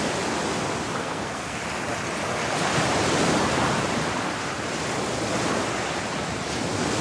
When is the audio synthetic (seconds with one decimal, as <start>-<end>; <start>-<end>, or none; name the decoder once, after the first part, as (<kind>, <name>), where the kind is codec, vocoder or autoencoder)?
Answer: 1.0-1.6 (codec, SNAC)